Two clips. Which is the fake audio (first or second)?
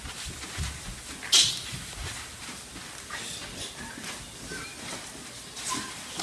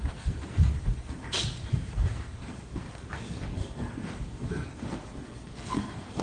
second